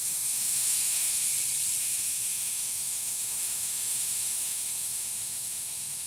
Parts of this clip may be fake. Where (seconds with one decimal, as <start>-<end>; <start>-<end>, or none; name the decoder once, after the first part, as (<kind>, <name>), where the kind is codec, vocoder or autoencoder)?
0.0-1.3 (autoencoder, DAC-VAE); 1.8-6.1